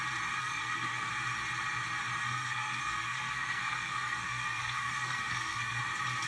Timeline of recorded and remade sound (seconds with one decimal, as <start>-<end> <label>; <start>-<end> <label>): 0.0-0.4 recorded; 0.4-1.1 remade; 1.1-2.2 recorded; 2.2-5.8 remade; 5.8-6.3 recorded